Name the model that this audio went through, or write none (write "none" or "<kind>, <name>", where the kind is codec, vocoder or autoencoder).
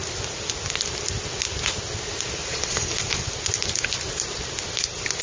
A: none